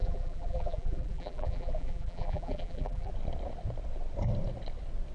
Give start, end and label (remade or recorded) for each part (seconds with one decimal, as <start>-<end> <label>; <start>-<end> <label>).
0.0-3.1 remade; 3.1-5.1 recorded